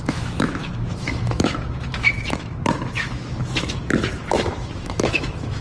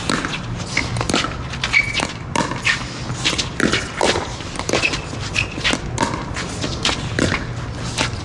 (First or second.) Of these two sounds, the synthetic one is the first